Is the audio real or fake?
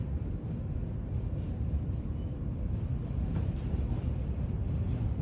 fake